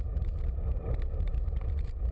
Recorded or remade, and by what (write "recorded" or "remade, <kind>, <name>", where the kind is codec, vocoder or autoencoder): remade, vocoder, BigVGAN v2